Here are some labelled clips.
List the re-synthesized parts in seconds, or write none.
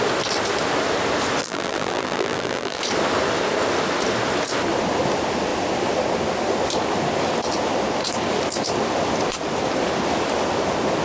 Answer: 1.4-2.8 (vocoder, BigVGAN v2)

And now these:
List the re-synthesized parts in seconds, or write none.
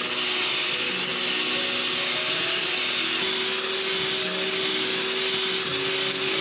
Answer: none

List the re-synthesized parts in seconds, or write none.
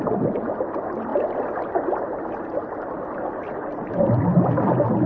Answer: none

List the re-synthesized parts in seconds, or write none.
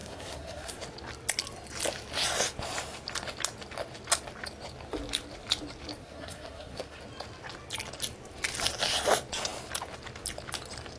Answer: 0.0-0.8 (codec, SNAC); 6.0-7.0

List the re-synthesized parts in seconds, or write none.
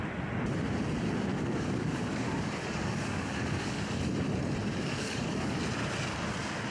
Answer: 1.3-4.0 (codec, DAC); 4.6-5.6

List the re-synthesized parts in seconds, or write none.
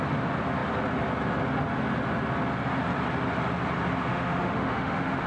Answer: 4.1-5.3 (autoencoder, DAC-VAE)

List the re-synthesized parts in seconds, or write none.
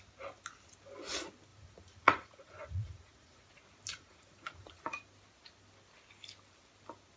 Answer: 1.5-3.5 (vocoder, Vocos); 3.9-5.0